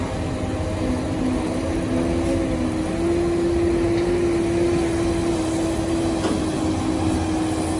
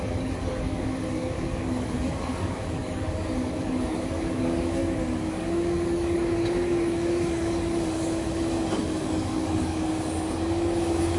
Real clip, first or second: first